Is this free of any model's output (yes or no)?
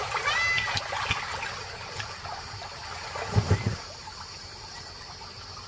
yes